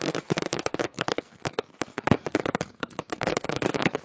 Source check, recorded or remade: remade